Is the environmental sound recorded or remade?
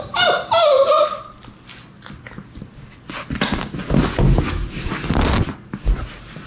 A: recorded